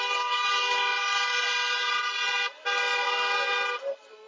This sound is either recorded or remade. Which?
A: recorded